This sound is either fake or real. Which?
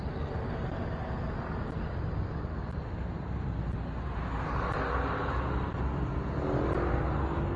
real